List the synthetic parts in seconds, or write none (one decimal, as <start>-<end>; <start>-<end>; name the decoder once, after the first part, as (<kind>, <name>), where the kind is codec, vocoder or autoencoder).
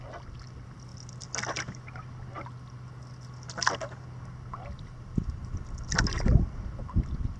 none